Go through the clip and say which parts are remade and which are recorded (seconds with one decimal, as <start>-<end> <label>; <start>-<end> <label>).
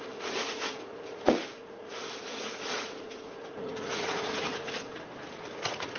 0.0-6.0 remade